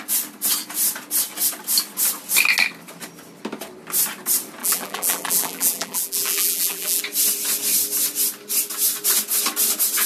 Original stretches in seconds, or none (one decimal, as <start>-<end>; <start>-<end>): 0.0-4.6; 7.0-10.1